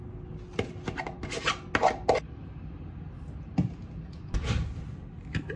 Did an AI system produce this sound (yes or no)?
no